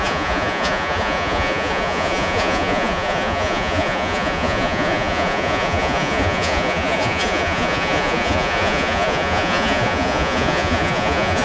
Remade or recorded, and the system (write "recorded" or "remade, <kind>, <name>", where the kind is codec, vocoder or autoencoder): remade, vocoder, Vocos